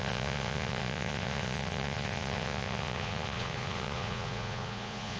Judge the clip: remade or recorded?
remade